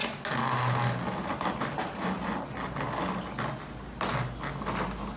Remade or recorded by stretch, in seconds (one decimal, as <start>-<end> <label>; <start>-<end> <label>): 0.0-5.2 recorded